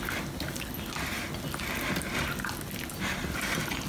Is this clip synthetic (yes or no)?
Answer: no